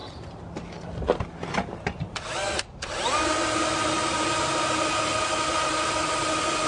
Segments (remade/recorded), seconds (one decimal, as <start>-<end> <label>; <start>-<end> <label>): 0.0-6.7 recorded